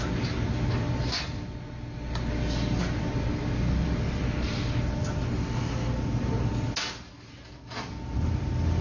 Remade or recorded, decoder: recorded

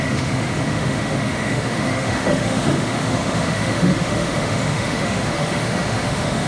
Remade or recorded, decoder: remade, autoencoder, DAC-VAE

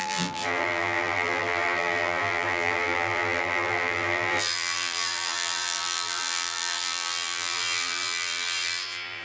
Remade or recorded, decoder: remade, vocoder, BigVGAN v2